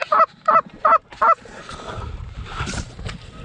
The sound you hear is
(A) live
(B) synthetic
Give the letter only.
B